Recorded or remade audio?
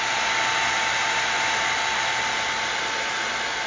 recorded